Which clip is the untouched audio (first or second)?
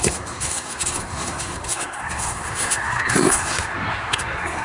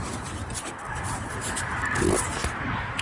second